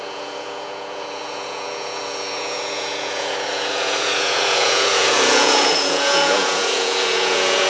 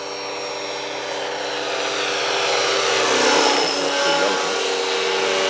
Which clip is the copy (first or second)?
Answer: first